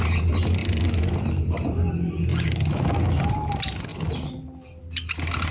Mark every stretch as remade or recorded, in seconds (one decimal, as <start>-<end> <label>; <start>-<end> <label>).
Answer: 0.0-5.5 recorded